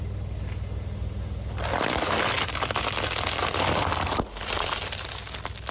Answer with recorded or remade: recorded